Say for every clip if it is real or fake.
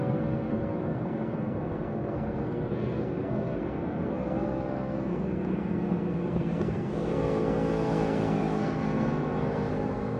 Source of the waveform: fake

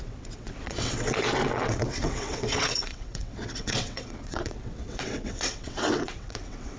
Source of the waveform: fake